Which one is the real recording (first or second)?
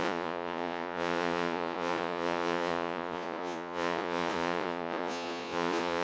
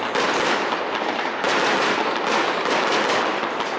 second